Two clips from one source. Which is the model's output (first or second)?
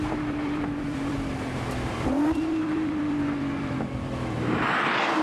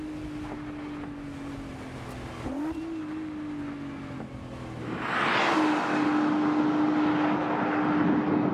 first